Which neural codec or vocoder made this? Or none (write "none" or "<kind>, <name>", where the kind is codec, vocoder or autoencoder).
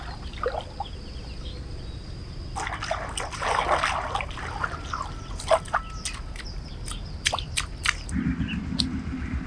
none